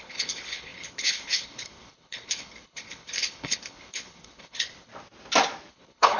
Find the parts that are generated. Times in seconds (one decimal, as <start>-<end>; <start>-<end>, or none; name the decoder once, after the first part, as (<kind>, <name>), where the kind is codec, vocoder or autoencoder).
0.0-4.9 (codec, HILCodec); 5.7-6.2